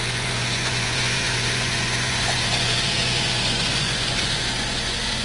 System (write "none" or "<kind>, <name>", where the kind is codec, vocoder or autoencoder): vocoder, Vocos